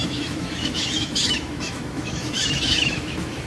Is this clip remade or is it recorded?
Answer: remade